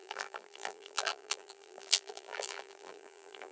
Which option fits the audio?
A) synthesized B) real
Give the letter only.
A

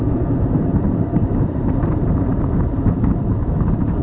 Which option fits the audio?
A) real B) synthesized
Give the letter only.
B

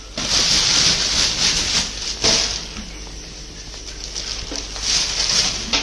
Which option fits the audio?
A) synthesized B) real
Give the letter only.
B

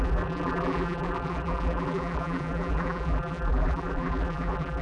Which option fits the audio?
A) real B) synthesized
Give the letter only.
B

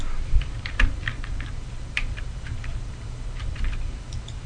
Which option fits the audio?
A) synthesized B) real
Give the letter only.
A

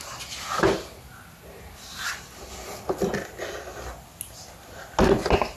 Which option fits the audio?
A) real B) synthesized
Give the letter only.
A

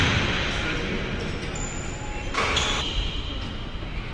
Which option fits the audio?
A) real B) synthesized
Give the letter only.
A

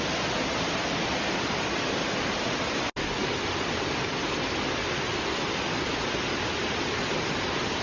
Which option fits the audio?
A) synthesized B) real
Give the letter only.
B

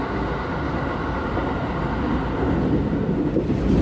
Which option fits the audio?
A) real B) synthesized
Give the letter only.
A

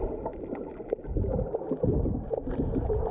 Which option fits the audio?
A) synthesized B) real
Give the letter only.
B